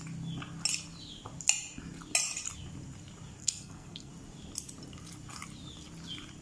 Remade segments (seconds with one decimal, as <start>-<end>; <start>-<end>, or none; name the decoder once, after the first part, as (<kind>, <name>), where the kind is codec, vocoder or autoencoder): 3.4-4.1 (codec, SNAC)